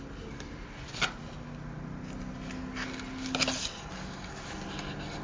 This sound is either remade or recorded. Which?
recorded